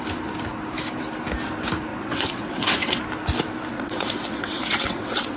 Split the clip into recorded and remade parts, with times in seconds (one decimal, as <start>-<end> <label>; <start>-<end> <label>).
0.0-1.9 recorded; 1.9-3.0 remade; 3.0-3.7 recorded; 3.7-5.4 remade